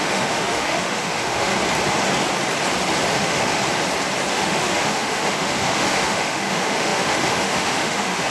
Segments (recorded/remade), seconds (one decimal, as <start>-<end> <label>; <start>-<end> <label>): 0.0-1.5 remade; 1.5-3.1 recorded; 3.1-3.6 remade; 3.6-4.3 recorded; 4.3-8.3 remade